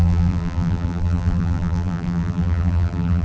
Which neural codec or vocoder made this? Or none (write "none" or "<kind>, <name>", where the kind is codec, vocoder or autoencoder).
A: vocoder, BigVGAN v2